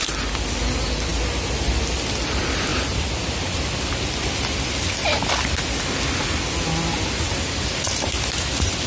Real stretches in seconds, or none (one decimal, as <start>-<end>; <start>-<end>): 0.0-1.1; 1.8-8.9

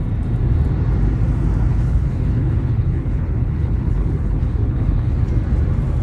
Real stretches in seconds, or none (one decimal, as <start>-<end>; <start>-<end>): 0.0-1.7; 5.3-6.0